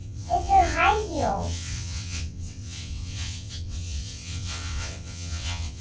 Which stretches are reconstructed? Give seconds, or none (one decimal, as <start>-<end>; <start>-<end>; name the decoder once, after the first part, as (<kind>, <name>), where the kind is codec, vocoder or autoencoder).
0.0-5.8 (vocoder, WaveNeXt)